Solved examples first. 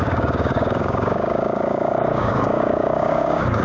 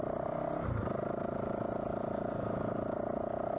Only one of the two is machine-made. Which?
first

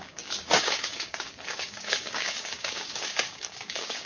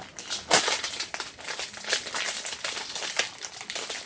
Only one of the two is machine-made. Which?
first